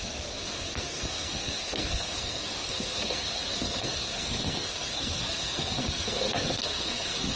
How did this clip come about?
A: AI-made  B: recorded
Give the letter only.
A